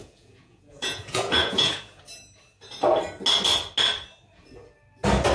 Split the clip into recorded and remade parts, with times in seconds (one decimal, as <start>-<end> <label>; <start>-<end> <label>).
0.0-2.0 remade; 2.0-5.3 recorded